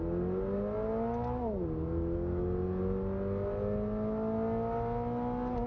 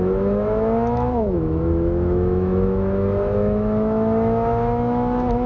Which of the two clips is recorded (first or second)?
first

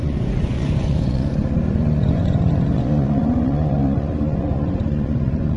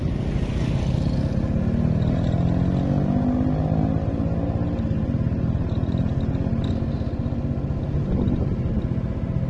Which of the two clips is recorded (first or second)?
second